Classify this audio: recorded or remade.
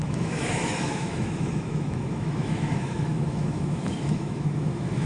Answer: remade